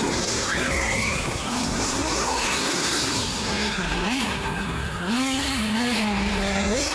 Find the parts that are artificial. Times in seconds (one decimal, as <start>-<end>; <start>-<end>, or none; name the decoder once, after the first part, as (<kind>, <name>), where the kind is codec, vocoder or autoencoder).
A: 0.0-6.9 (codec, SNAC)